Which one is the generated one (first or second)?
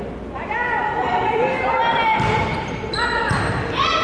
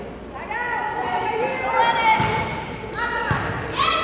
first